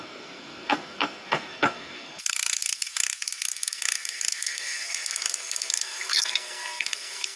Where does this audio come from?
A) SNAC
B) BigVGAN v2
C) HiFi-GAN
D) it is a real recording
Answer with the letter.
A